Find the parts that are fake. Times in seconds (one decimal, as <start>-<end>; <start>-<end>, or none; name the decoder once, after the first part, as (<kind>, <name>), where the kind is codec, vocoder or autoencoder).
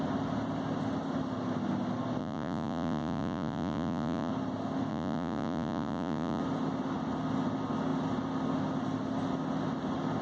2.2-4.3 (vocoder, Vocos); 4.9-6.4